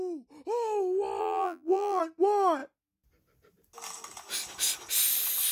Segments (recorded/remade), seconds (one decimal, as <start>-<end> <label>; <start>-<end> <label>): 0.0-1.2 recorded; 1.2-2.0 remade; 2.0-5.5 recorded